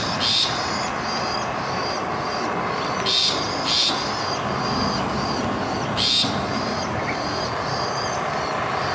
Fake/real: real